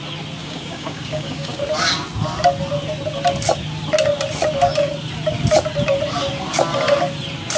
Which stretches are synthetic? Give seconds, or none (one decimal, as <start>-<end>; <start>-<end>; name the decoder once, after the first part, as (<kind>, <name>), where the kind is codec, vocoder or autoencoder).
0.4-1.6 (codec, DAC)